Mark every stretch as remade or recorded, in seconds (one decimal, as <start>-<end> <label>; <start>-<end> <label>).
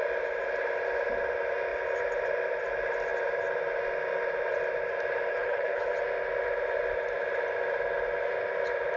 0.0-5.3 recorded; 5.3-5.9 remade; 5.9-9.0 recorded